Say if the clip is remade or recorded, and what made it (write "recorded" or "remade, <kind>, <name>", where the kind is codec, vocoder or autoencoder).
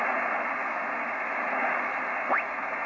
recorded